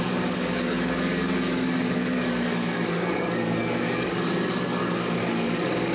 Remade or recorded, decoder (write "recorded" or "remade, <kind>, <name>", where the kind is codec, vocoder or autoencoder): remade, codec, DAC